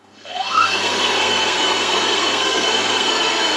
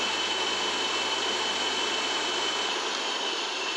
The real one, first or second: second